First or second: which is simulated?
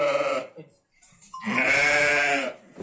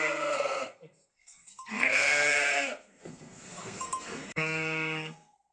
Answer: second